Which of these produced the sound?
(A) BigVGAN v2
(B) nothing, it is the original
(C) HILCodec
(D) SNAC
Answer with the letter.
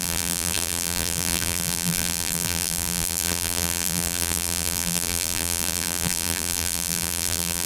A